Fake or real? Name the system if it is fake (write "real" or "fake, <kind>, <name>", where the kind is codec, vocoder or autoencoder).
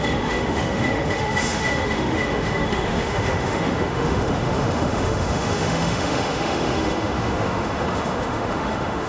fake, autoencoder, DAC-VAE